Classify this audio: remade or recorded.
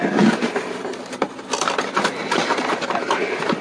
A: recorded